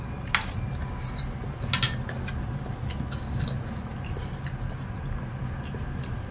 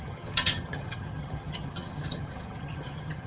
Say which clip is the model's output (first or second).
second